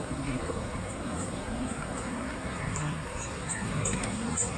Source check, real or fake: fake